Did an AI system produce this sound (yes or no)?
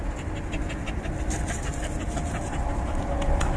no